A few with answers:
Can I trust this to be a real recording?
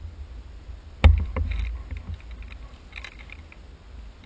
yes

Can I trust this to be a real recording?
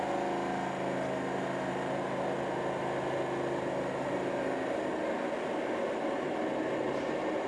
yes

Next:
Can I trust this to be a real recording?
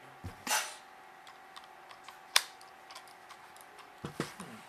yes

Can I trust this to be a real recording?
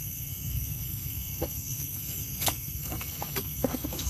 no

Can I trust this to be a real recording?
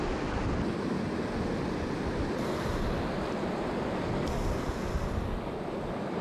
yes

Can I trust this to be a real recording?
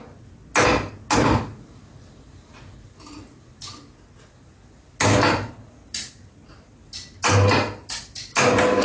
yes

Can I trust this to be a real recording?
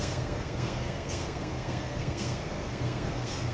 no